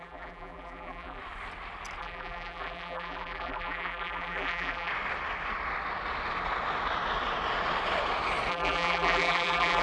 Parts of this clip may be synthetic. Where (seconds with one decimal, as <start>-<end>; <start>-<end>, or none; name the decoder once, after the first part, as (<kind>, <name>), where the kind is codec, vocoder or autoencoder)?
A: 0.0-1.2 (vocoder, BigVGAN v2); 2.0-4.9; 8.5-9.8